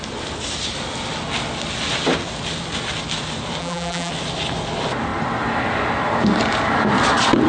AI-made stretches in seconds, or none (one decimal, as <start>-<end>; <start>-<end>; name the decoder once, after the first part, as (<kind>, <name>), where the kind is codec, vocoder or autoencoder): 3.6-4.1 (vocoder, BigVGAN v2)